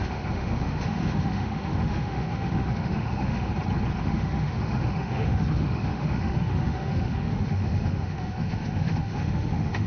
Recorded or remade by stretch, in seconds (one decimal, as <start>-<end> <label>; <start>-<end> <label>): 0.0-3.5 remade; 3.5-4.0 recorded; 4.0-9.9 remade